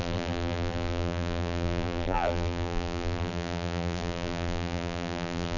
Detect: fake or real fake